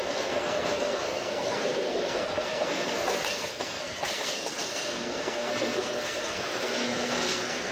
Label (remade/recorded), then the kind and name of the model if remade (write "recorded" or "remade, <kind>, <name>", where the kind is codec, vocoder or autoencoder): remade, codec, SNAC